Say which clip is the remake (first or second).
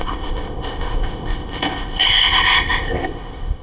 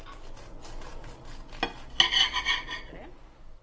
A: first